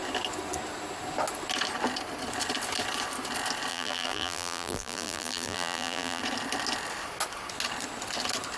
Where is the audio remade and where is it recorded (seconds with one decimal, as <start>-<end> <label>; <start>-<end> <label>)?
0.0-3.7 recorded; 3.7-6.2 remade; 6.2-8.6 recorded